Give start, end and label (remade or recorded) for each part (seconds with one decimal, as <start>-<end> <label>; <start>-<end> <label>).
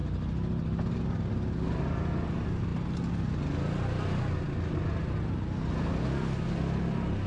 0.0-7.3 recorded